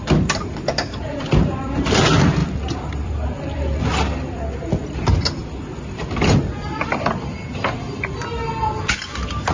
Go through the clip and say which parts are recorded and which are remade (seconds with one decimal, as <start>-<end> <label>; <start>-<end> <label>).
0.0-2.4 recorded; 2.4-3.8 remade; 3.8-9.5 recorded